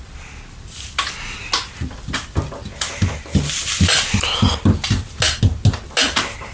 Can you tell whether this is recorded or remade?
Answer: recorded